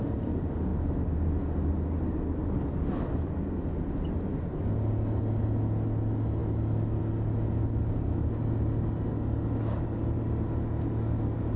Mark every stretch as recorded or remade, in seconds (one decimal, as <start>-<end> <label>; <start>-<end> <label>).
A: 0.0-11.6 recorded